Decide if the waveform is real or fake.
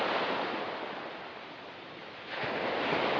real